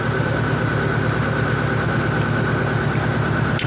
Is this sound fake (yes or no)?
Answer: no